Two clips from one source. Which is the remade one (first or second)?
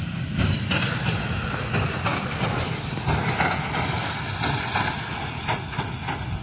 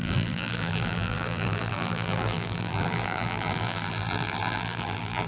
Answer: second